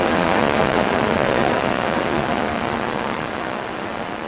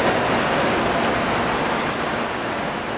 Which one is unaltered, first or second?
second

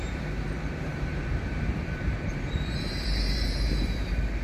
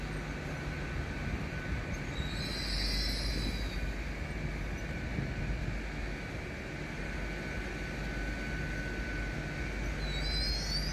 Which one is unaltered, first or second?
second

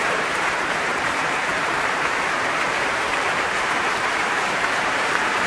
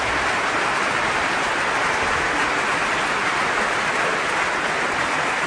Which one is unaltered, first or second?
second